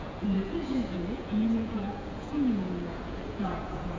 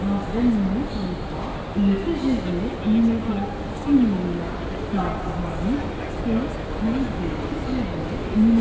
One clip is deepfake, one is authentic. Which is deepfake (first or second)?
first